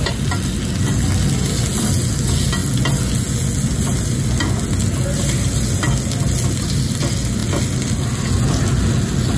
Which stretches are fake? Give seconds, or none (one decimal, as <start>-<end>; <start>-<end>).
none

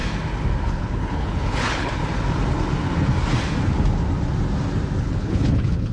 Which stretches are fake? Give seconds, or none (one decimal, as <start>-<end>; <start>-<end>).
0.7-2.0; 5.0-5.9

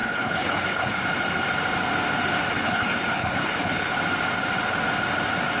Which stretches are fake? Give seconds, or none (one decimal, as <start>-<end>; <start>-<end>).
0.0-1.0; 2.5-4.0